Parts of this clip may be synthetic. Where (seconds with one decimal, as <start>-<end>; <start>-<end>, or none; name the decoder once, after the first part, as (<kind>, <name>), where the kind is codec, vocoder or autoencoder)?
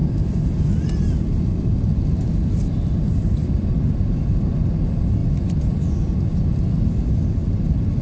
0.0-1.8 (vocoder, BigVGAN v2); 3.4-4.0